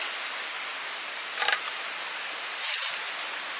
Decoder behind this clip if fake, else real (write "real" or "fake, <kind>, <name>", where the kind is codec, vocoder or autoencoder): real